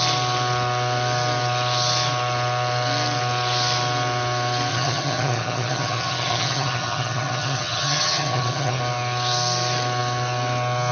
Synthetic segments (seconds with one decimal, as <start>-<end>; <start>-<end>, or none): 4.7-8.8